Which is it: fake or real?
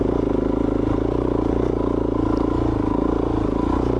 real